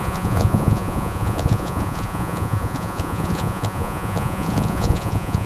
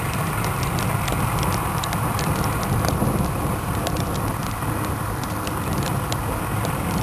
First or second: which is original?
second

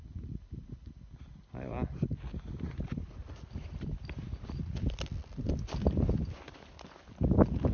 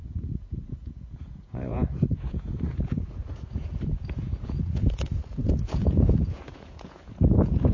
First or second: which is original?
first